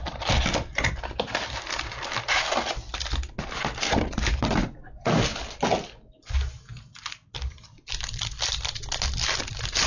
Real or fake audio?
real